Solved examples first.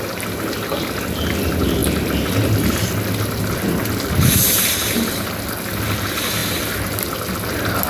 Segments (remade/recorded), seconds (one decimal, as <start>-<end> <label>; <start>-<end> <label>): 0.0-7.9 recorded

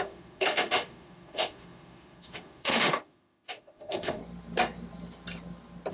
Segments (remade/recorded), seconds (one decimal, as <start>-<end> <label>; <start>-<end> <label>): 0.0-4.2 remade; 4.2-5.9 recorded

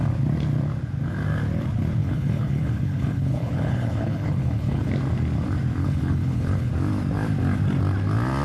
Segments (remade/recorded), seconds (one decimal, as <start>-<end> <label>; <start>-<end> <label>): 0.0-2.0 recorded; 2.0-4.9 remade; 4.9-5.8 recorded; 5.8-6.7 remade; 6.7-8.4 recorded